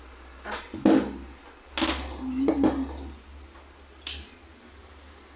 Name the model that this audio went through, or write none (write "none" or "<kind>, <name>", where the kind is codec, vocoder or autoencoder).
none